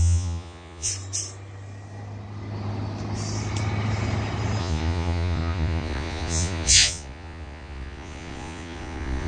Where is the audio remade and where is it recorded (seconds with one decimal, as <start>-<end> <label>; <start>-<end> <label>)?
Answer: 0.0-0.9 remade; 0.9-4.6 recorded; 4.6-9.3 remade